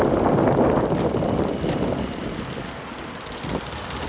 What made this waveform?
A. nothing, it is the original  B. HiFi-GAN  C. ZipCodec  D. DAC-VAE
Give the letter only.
A